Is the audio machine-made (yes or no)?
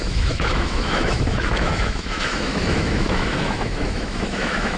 yes